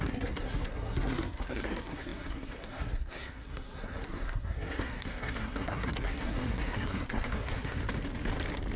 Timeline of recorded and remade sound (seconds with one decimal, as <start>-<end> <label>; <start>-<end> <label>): 0.0-7.8 remade; 7.8-8.8 recorded